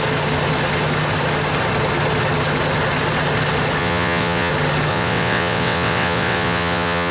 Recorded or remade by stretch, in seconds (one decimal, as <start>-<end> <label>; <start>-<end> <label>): 0.0-3.8 recorded; 3.8-4.5 remade; 4.5-4.9 recorded; 4.9-7.1 remade